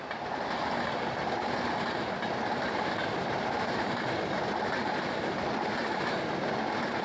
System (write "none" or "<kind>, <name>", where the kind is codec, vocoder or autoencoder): none